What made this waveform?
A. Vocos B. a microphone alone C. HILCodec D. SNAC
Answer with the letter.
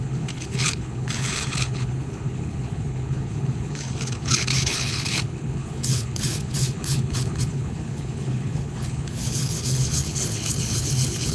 C